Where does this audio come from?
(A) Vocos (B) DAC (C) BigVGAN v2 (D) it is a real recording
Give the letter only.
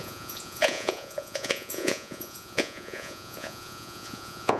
A